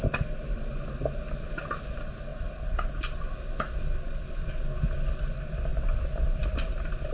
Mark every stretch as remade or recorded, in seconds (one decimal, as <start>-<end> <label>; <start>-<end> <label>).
0.0-2.3 recorded; 2.3-3.2 remade; 3.2-5.7 recorded; 5.7-7.1 remade

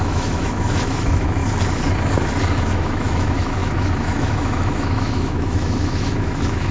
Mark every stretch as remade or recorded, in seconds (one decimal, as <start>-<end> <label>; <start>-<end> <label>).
0.0-1.4 remade; 1.4-2.7 recorded; 2.7-6.7 remade

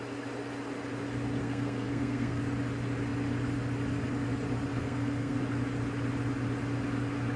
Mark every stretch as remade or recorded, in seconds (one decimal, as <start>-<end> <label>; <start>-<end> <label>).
0.0-1.4 recorded; 1.4-2.4 remade; 2.4-4.7 recorded; 4.7-5.4 remade; 5.4-7.4 recorded

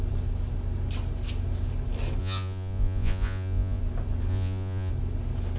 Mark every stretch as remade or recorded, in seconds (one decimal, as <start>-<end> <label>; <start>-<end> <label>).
0.0-2.2 recorded; 2.2-3.8 remade; 3.8-4.3 recorded; 4.3-4.9 remade; 4.9-5.6 recorded

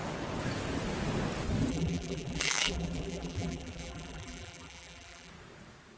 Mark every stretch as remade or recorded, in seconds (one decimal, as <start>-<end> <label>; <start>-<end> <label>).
0.0-1.7 recorded; 1.7-5.3 remade; 5.3-6.0 recorded

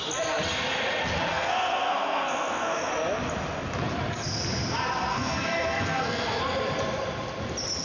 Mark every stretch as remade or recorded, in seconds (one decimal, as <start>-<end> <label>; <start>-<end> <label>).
0.0-1.3 recorded; 1.3-2.9 remade; 2.9-5.1 recorded; 5.1-6.4 remade; 6.4-7.8 recorded

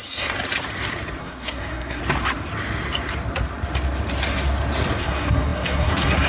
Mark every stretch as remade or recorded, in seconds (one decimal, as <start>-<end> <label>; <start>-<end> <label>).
0.0-1.2 recorded; 1.2-2.0 remade; 2.0-5.0 recorded; 5.0-6.3 remade